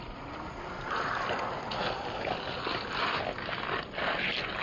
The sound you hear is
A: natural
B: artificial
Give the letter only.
A